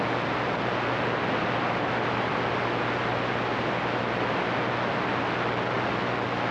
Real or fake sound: real